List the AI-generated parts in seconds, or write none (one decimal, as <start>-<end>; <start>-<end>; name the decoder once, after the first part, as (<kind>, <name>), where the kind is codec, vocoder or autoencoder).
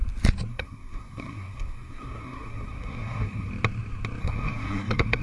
0.5-3.5 (codec, SNAC); 4.2-5.2